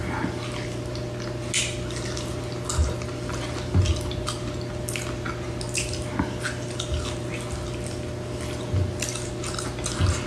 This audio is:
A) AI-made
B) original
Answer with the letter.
B